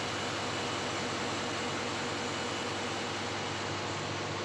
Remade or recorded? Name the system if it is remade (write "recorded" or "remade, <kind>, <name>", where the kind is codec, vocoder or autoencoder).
recorded